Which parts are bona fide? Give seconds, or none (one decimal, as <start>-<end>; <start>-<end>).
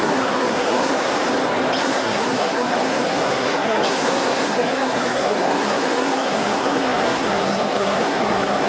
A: 1.1-1.8